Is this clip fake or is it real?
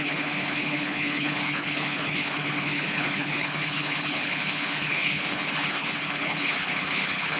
fake